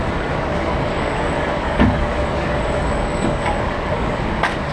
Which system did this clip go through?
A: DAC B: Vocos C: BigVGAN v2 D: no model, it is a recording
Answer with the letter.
A